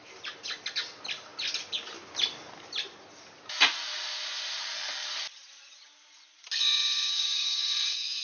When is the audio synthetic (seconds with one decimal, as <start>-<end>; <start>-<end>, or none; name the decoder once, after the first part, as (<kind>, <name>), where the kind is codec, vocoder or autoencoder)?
4.6-5.1 (codec, DAC); 7.1-8.2